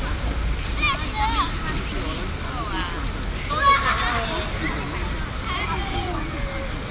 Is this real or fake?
real